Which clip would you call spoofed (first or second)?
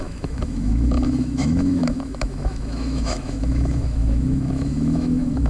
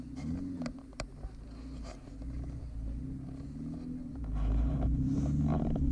first